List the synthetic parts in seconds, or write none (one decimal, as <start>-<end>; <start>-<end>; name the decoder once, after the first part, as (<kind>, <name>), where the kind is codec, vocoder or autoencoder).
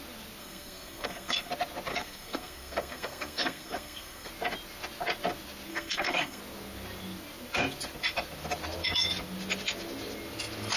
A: 0.4-1.5 (codec, SNAC); 1.9-4.3; 5.7-6.4